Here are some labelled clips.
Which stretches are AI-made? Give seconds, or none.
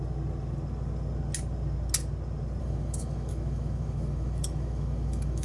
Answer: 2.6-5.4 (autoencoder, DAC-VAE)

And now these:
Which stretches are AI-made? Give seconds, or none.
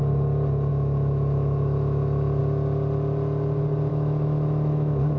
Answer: 0.7-2.4 (autoencoder, DAC-VAE); 3.9-5.2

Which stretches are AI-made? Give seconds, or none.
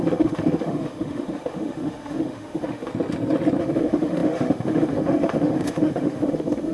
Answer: 0.0-2.9 (autoencoder, DAC-VAE); 3.6-6.7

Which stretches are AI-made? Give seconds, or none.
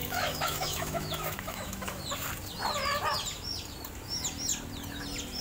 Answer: 0.0-1.9 (autoencoder, DAC-VAE)